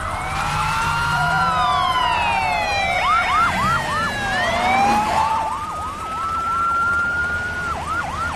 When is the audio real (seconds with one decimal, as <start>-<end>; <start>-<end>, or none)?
1.7-5.3

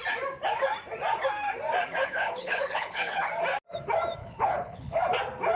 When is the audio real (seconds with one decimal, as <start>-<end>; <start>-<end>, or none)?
0.0-2.0; 3.3-4.2; 5.0-5.6

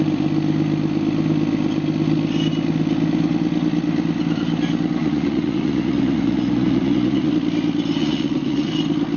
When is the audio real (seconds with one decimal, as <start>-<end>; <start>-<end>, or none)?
0.0-5.0; 7.3-8.0; 8.7-9.2

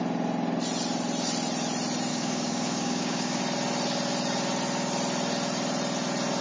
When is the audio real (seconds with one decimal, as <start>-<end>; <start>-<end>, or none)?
0.0-2.1; 3.4-6.4

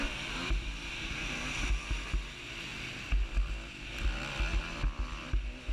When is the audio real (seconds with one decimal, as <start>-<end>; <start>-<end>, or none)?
0.0-5.7

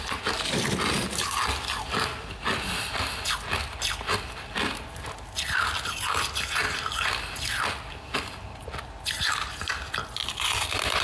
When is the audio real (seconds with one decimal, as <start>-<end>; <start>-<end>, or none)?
0.0-11.0

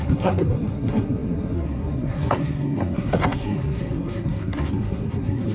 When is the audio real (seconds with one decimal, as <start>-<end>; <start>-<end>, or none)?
none